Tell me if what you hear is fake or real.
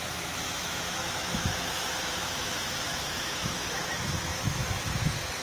fake